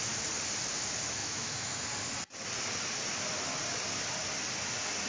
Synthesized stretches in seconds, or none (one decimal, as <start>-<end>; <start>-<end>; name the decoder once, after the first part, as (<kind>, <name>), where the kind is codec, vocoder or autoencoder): 1.2-1.8 (autoencoder, DAC-VAE)